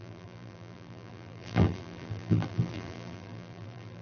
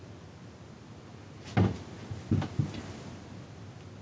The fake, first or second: first